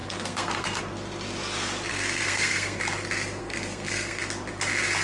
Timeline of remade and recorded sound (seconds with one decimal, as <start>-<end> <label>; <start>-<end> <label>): 0.0-0.8 remade; 0.8-1.9 recorded; 1.9-2.8 remade; 2.8-3.4 recorded; 3.4-4.2 remade; 4.2-5.0 recorded